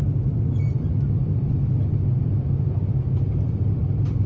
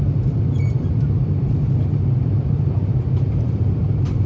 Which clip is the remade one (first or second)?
second